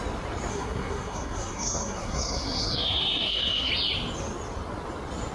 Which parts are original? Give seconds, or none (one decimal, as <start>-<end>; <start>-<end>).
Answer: 0.0-0.5; 3.7-5.3